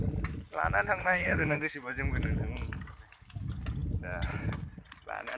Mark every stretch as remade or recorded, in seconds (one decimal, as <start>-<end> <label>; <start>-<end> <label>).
0.0-1.0 recorded; 1.0-1.7 remade; 1.7-5.4 recorded